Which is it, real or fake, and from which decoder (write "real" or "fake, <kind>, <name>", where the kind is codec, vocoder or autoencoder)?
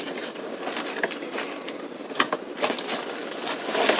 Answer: real